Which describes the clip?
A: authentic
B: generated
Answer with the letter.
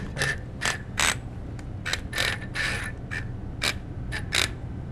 A